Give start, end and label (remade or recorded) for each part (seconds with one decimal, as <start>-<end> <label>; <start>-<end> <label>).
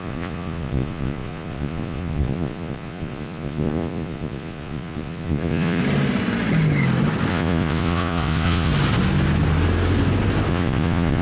0.0-5.8 remade; 5.8-7.3 recorded; 7.3-8.7 remade; 8.7-10.5 recorded; 10.5-11.2 remade